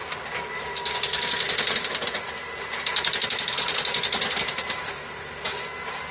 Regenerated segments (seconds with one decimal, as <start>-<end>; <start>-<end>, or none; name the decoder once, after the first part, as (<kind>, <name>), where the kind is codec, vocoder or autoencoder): none